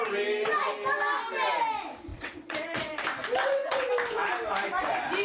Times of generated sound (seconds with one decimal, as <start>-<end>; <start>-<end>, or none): 2.1-2.9; 3.4-3.9